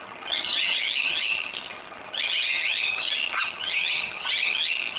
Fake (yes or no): yes